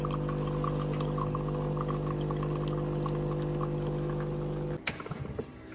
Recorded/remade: recorded